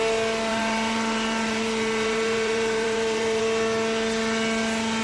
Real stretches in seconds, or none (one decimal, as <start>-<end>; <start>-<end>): 0.0-0.5; 3.4-5.0